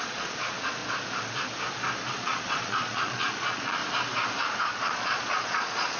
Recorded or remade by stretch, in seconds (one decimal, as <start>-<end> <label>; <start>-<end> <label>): 0.0-0.8 remade; 0.8-2.1 recorded; 2.1-3.8 remade; 3.8-4.6 recorded; 4.6-6.0 remade